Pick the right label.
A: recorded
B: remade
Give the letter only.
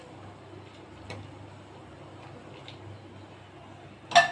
A